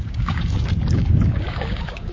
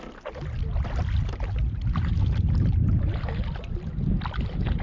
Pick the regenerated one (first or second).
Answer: first